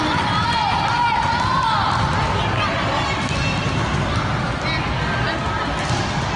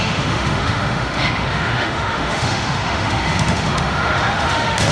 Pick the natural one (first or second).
first